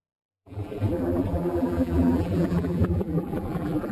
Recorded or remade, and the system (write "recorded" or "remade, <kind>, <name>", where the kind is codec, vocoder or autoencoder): remade, vocoder, BigVGAN v2